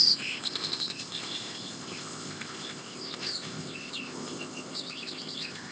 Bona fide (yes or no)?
no